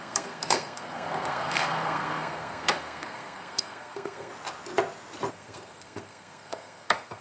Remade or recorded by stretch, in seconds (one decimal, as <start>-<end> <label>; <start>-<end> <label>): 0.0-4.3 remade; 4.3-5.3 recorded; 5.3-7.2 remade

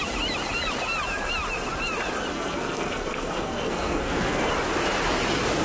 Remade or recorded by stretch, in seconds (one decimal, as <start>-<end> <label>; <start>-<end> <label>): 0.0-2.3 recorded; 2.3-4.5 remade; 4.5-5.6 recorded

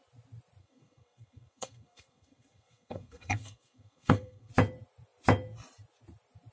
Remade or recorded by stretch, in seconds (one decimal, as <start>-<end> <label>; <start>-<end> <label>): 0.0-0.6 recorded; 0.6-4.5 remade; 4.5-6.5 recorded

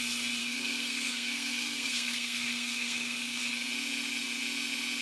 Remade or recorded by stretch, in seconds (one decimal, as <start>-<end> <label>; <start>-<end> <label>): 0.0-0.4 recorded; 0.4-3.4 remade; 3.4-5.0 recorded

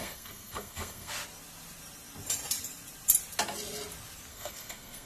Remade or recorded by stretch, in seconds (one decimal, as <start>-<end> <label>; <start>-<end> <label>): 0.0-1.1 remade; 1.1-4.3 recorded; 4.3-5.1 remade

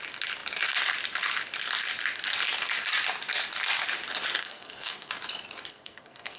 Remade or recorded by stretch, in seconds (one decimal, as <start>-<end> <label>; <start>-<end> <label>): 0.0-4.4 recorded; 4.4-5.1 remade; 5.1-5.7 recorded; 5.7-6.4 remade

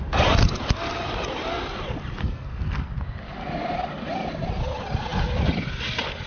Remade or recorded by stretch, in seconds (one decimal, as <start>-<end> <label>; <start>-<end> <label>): 0.0-2.2 recorded; 2.2-2.9 remade; 2.9-6.3 recorded

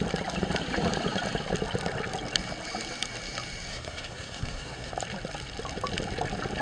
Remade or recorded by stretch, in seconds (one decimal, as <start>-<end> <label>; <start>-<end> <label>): 0.0-3.7 recorded; 3.7-4.9 remade; 4.9-6.6 recorded